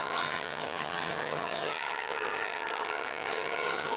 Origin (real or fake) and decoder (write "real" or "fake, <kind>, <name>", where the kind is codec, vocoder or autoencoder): fake, vocoder, HiFi-GAN